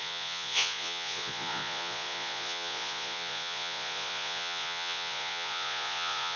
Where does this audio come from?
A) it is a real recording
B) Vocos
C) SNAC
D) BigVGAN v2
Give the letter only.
B